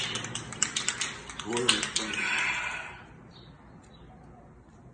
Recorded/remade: recorded